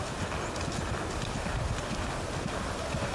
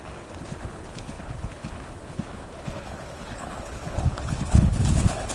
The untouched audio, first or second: first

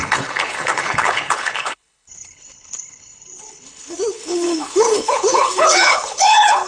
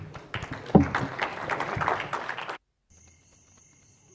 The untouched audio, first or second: second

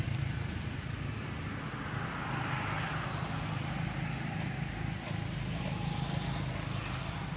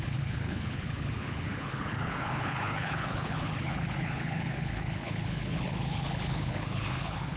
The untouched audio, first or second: first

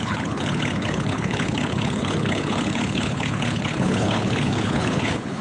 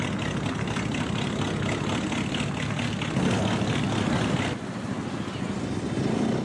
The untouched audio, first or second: second